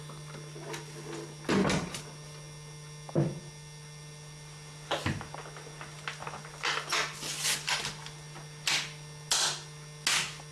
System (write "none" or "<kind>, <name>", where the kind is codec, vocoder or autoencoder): none